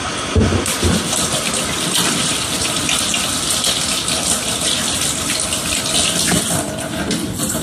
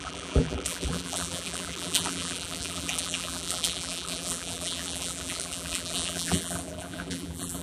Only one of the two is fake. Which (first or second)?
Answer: second